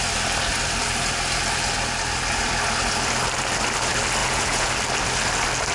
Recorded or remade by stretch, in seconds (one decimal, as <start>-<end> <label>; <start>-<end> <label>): 0.0-4.2 recorded; 4.2-4.7 remade; 4.7-5.7 recorded